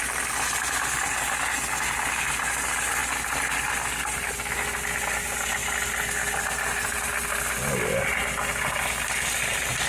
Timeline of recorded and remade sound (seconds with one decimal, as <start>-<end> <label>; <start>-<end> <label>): 0.0-5.6 recorded; 5.6-7.3 remade; 7.3-9.9 recorded